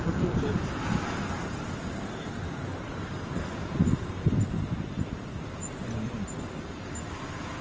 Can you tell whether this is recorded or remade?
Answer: recorded